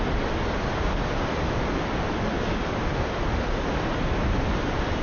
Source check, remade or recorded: recorded